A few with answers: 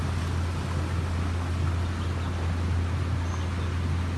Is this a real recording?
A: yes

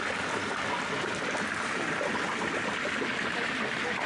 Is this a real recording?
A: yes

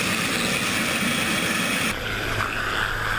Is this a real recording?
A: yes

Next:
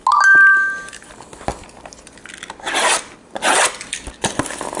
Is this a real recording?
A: yes